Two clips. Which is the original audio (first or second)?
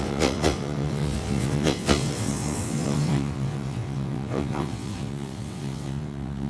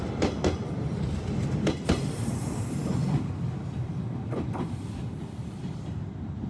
second